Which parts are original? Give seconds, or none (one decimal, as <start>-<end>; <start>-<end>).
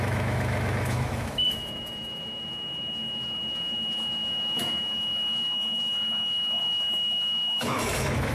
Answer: none